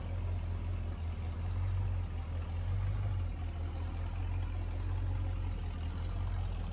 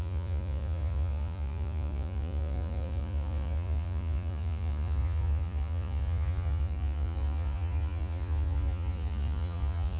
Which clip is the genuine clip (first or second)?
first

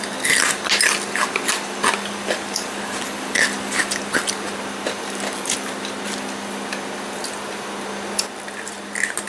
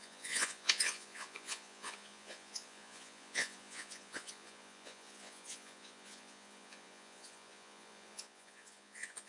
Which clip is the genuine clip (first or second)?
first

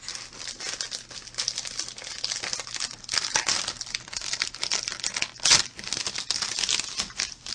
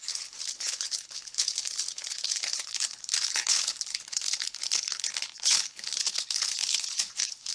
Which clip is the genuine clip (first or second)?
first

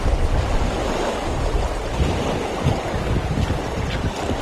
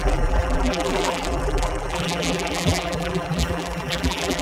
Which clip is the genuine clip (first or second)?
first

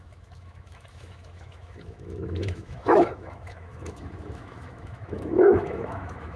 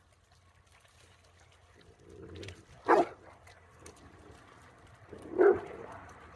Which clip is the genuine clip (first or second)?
second